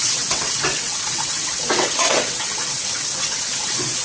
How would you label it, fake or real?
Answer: fake